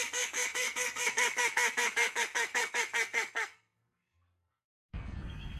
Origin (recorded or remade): remade